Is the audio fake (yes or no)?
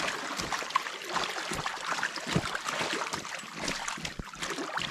no